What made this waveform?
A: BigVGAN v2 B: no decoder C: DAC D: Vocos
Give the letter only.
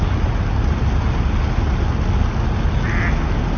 B